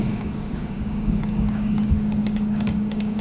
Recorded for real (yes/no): no